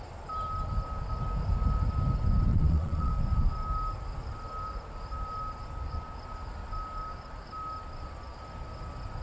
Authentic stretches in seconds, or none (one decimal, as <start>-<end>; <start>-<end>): 0.0-2.5; 3.1-9.2